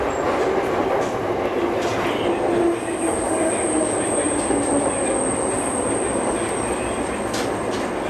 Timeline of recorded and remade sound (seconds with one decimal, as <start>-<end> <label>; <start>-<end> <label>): 0.0-8.1 recorded